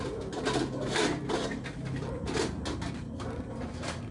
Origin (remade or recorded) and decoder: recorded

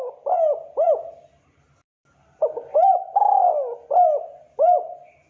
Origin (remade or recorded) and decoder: recorded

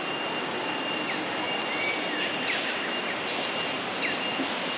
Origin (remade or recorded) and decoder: recorded